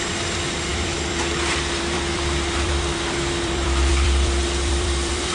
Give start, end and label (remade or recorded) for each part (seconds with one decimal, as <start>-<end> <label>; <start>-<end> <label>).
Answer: 0.0-5.3 remade